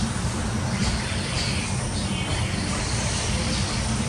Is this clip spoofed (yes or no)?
yes